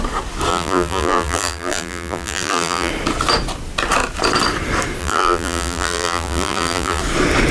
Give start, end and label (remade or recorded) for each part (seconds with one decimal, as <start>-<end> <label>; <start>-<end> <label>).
0.0-0.5 recorded; 0.5-2.9 remade; 2.9-5.0 recorded; 5.0-7.0 remade; 7.0-7.5 recorded

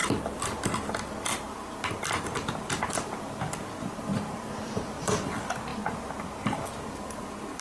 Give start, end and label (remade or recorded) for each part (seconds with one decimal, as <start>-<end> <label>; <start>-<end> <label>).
0.0-5.7 remade; 5.7-6.9 recorded; 6.9-7.6 remade

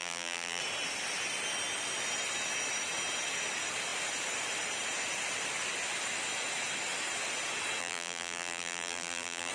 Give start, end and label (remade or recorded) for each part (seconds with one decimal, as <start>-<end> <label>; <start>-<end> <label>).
0.0-0.6 remade; 0.6-7.8 recorded; 7.8-9.5 remade

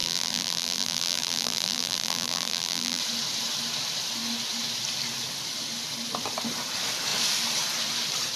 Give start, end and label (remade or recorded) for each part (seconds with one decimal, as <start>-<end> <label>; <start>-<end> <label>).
0.0-3.0 remade; 3.0-8.4 recorded

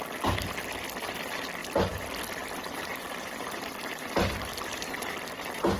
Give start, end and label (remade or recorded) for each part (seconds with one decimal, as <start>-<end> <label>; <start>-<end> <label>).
0.0-1.6 recorded; 1.6-5.1 remade; 5.1-5.8 recorded

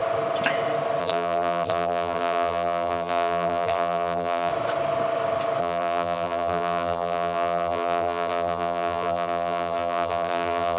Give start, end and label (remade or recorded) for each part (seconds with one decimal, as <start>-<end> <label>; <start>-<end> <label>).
0.0-1.0 recorded; 1.0-4.5 remade; 4.5-5.6 recorded; 5.6-10.8 remade

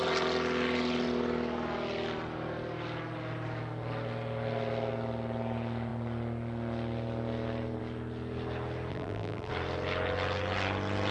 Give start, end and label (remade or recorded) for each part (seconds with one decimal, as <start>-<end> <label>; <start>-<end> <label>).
0.0-8.9 recorded; 8.9-9.5 remade; 9.5-11.1 recorded

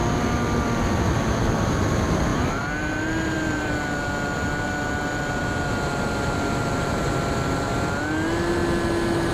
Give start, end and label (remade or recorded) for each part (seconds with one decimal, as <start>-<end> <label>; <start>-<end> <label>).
0.0-2.3 recorded; 2.3-3.7 remade; 3.7-6.6 recorded; 6.6-7.1 remade; 7.1-9.3 recorded